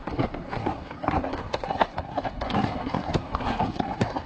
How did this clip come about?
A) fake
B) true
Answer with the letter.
A